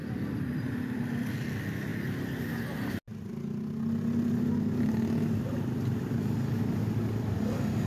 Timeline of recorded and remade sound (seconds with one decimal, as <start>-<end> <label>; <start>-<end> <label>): 0.0-1.3 remade; 1.3-7.9 recorded